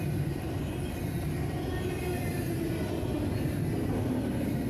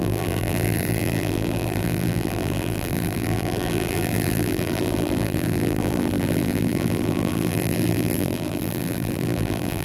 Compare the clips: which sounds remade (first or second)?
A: second